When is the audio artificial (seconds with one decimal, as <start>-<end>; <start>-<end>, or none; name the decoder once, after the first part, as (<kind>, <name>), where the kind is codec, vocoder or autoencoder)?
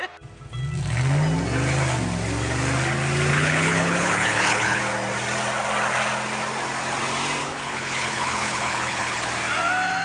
3.3-4.8 (codec, HILCodec); 7.4-9.3